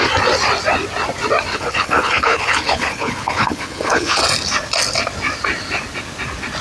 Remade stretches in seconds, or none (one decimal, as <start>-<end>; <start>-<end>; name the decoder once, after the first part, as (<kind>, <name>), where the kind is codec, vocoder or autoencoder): 1.5-4.2 (codec, HILCodec)